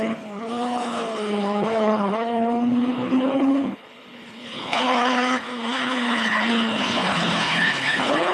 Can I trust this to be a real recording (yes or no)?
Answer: no